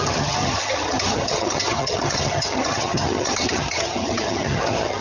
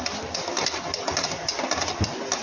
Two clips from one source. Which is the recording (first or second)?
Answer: second